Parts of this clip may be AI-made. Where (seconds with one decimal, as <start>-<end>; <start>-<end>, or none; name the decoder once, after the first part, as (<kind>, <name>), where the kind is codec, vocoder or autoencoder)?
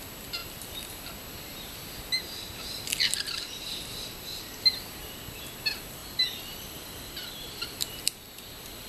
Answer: 6.0-8.0 (vocoder, BigVGAN v2)